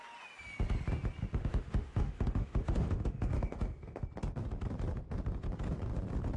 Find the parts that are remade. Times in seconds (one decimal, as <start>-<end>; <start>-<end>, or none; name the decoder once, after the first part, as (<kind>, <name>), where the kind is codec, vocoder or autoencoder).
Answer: 1.4-4.0 (autoencoder, DAC-VAE)